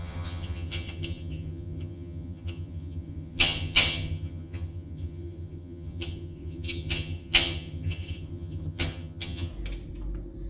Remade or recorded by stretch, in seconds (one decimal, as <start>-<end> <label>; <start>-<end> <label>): 0.0-9.5 remade; 9.5-10.5 recorded